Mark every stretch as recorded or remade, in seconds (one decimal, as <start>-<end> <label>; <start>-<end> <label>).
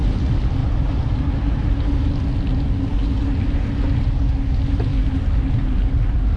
0.0-0.6 recorded; 0.6-1.7 remade; 1.7-6.4 recorded